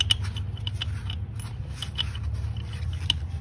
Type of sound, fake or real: real